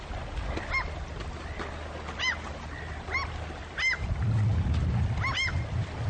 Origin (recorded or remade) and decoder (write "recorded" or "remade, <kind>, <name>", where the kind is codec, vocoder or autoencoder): recorded